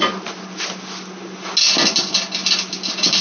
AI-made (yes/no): no